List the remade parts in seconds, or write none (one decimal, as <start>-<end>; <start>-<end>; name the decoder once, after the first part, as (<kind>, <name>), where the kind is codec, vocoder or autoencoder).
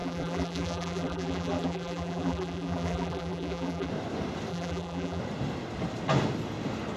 0.0-3.9 (vocoder, BigVGAN v2); 4.5-5.2